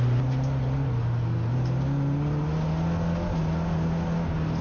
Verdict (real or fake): real